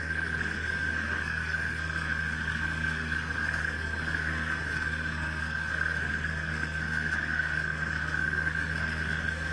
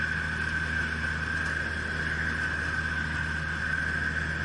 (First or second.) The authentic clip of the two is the second